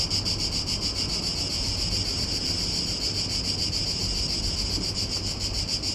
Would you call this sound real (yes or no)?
yes